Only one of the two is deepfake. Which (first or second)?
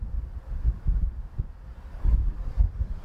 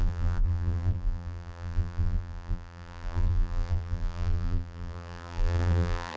second